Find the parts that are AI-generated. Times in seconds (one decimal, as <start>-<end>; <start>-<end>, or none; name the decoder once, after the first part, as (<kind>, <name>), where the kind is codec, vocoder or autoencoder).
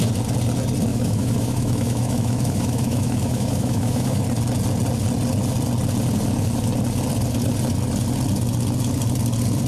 0.9-4.2 (autoencoder, DAC-VAE)